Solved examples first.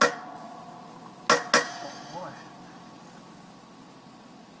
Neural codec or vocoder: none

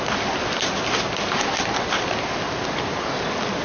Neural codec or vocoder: none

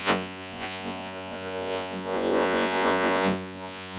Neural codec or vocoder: vocoder, Vocos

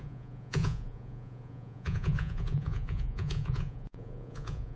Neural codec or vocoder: vocoder, Vocos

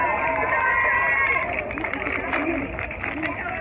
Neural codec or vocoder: none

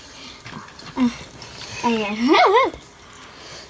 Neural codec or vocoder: none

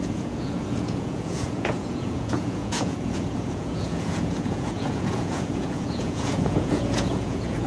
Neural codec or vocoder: vocoder, Vocos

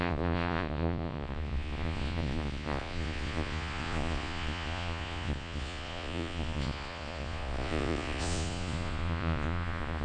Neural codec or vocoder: vocoder, Vocos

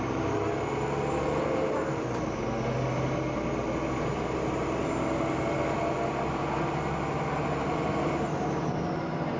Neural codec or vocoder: none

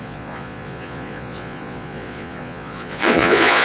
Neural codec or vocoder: vocoder, Vocos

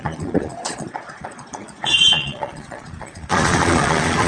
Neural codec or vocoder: vocoder, Vocos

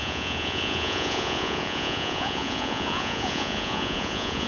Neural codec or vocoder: vocoder, Vocos